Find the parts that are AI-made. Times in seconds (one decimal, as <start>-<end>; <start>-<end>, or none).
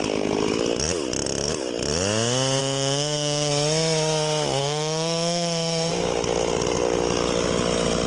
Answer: 2.6-3.5; 4.6-5.9